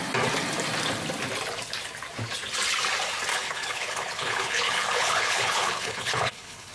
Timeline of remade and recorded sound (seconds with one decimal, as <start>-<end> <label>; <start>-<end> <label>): 0.0-3.3 recorded; 3.3-6.7 remade